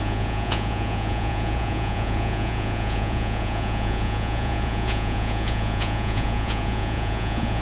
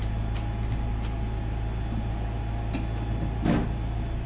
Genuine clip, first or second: second